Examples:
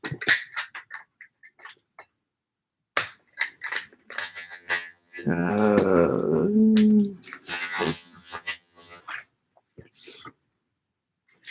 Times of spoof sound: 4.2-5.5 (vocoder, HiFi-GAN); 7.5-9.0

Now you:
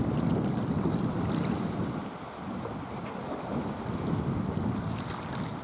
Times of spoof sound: none

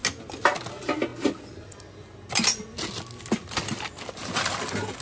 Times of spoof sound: none

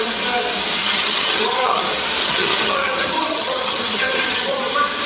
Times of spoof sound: 0.8-1.8 (vocoder, HiFi-GAN); 2.2-4.6